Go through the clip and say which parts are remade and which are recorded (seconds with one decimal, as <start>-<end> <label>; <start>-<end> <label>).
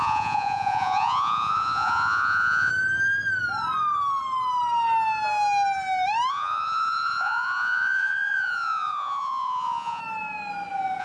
0.0-2.7 remade; 2.7-6.3 recorded; 6.3-10.0 remade; 10.0-11.0 recorded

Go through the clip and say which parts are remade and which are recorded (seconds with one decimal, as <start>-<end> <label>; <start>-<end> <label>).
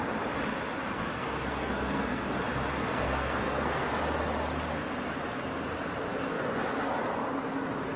0.0-0.9 recorded; 0.9-2.3 remade; 2.3-2.7 recorded; 2.7-3.9 remade; 3.9-8.0 recorded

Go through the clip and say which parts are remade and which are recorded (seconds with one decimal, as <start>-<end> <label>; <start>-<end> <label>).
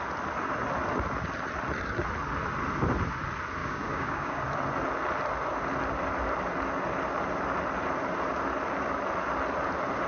0.0-3.6 recorded; 3.6-4.4 remade; 4.4-10.1 recorded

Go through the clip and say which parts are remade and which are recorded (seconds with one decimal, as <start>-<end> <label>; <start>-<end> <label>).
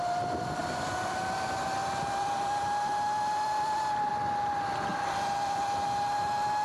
0.0-0.6 recorded; 0.6-4.1 remade; 4.1-4.9 recorded; 4.9-5.6 remade; 5.6-6.6 recorded